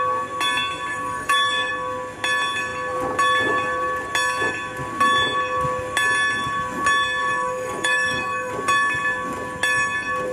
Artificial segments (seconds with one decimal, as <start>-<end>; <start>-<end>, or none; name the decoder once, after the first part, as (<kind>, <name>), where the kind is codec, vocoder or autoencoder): 0.9-1.7 (codec, DAC); 7.2-8.5